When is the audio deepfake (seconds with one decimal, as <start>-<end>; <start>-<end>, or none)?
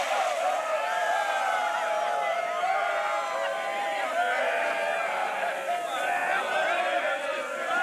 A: none